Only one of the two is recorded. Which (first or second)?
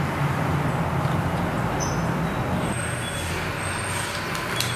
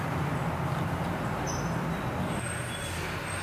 first